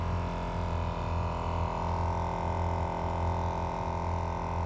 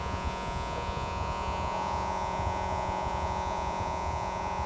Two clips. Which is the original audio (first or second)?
first